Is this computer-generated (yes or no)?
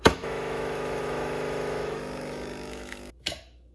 yes